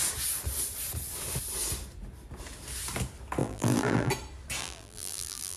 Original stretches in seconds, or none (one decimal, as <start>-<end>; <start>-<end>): 0.0-3.4; 4.1-4.6